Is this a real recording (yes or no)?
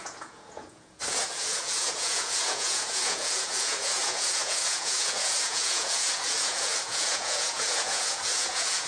no